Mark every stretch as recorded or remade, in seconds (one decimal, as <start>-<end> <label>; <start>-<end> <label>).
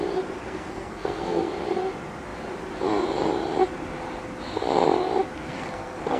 0.0-0.4 recorded; 0.4-1.5 remade; 1.5-5.4 recorded; 5.4-6.2 remade